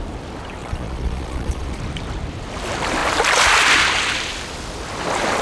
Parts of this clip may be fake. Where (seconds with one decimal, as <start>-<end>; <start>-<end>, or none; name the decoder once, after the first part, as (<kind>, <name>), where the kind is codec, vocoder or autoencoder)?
0.6-1.8 (vocoder, Vocos)